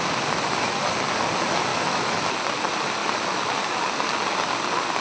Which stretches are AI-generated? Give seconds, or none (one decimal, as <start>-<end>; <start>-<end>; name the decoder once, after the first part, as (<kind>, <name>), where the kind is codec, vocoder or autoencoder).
1.7-2.2 (autoencoder, DAC-VAE); 3.0-3.8